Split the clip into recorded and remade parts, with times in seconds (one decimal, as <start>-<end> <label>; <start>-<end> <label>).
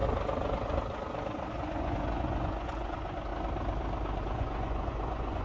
0.0-1.5 recorded; 1.5-3.3 remade; 3.3-4.2 recorded; 4.2-5.4 remade